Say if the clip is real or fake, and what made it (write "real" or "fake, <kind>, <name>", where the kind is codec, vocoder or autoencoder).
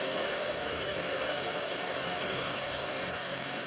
fake, codec, DAC